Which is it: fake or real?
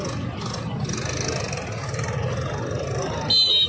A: real